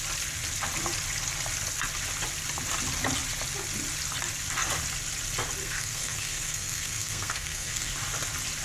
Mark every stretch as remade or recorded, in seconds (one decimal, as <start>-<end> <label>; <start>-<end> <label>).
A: 0.0-5.6 recorded; 5.6-7.9 remade; 7.9-8.6 recorded